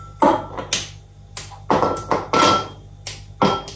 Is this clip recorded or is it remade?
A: recorded